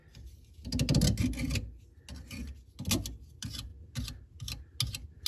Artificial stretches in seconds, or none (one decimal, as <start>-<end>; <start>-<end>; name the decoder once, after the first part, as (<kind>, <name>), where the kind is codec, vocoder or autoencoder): none